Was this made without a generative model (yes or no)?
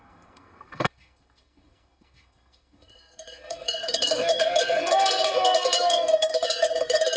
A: no